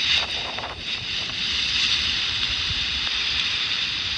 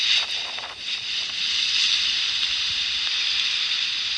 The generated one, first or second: first